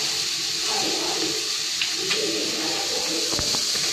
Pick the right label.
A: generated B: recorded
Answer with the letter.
A